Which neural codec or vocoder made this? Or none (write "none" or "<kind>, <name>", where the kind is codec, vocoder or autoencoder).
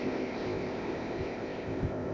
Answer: codec, ZipCodec